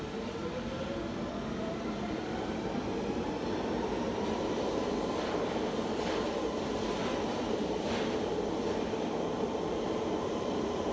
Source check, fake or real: real